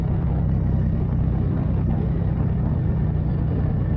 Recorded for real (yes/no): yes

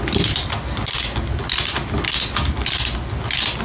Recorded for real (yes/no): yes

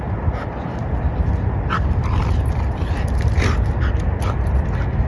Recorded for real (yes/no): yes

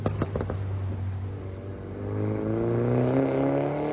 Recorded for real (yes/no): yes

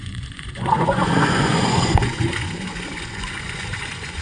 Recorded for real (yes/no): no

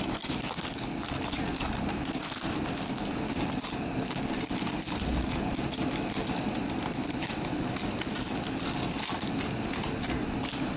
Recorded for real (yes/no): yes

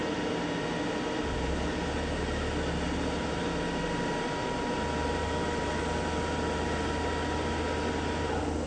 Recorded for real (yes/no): yes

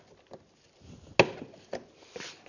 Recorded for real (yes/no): yes